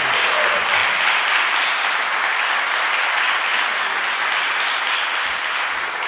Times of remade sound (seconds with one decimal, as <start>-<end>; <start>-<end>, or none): none